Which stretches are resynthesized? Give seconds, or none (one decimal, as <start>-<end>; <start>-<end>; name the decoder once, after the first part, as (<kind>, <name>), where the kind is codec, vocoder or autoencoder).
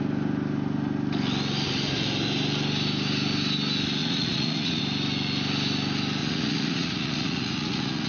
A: 4.0-4.8 (vocoder, Vocos); 6.2-8.1